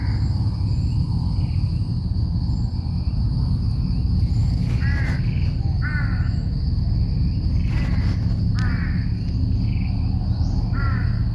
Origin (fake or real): real